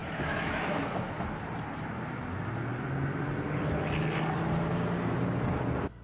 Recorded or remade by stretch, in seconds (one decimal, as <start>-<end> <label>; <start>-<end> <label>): 0.0-1.0 remade; 1.0-6.0 recorded